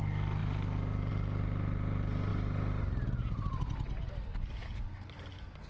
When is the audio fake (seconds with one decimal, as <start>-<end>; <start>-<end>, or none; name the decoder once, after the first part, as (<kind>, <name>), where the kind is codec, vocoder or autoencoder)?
none